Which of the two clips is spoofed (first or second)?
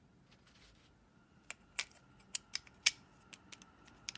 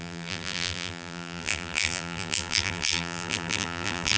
second